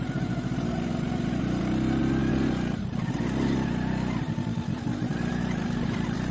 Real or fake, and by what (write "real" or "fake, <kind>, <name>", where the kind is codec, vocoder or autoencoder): real